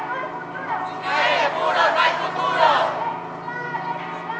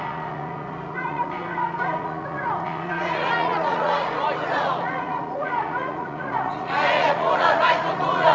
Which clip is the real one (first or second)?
first